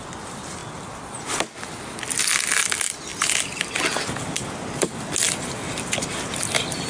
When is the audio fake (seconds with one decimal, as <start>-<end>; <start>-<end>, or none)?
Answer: none